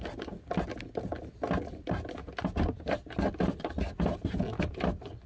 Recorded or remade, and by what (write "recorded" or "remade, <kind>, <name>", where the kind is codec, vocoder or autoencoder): recorded